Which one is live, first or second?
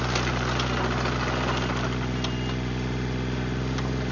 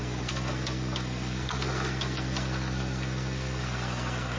first